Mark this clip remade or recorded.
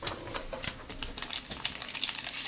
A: recorded